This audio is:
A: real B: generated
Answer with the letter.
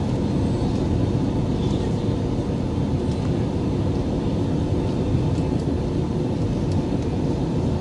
A